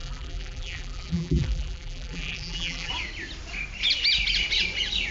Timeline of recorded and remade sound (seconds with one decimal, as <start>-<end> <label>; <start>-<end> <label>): 0.0-2.9 remade; 2.9-5.1 recorded